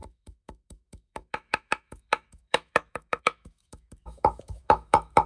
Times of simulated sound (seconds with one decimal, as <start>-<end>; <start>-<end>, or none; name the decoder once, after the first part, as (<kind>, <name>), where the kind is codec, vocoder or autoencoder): 0.0-5.3 (autoencoder, DAC-VAE)

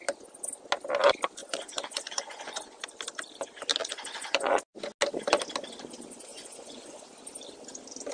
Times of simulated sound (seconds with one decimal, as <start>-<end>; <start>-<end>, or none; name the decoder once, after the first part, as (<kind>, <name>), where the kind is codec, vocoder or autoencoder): 1.4-2.8 (vocoder, Vocos); 3.8-4.6; 6.3-7.0

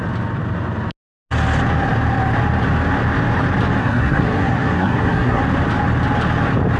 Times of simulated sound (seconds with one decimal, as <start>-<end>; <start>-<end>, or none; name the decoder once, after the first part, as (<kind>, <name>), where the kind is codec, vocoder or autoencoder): 3.8-5.4 (codec, SNAC)

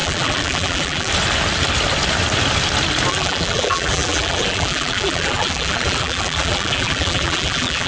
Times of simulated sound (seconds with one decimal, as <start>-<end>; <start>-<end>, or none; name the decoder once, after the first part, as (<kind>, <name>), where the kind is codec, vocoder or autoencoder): 0.0-1.1 (vocoder, BigVGAN v2); 3.1-7.9

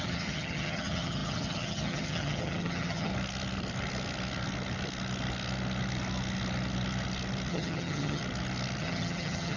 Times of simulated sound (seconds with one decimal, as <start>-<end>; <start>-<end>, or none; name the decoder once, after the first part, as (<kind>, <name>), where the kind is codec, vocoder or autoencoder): 0.0-3.1 (vocoder, HiFi-GAN); 7.5-8.2; 8.8-9.6

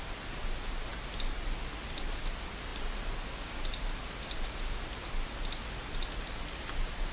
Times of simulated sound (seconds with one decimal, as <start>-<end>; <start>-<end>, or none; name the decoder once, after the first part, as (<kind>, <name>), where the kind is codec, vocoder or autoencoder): none

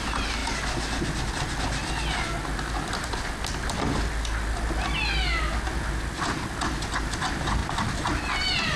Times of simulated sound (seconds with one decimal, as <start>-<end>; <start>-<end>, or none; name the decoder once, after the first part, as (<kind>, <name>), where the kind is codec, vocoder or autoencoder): none